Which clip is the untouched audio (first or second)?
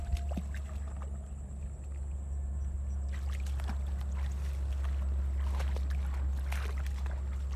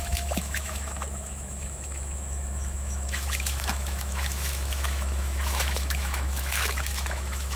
first